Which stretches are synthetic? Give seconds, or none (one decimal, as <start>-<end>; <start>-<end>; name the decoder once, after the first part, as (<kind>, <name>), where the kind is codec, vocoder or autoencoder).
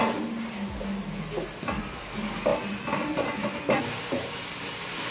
none